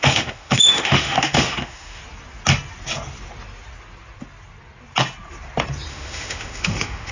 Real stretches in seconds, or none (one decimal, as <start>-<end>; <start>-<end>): 2.0-5.9